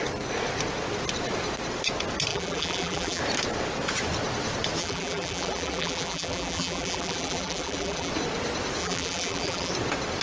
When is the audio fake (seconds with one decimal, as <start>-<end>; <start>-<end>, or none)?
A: 2.3-3.2; 4.8-8.1; 8.8-9.7